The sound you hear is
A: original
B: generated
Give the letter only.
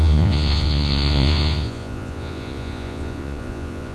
B